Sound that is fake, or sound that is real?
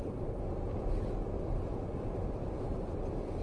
real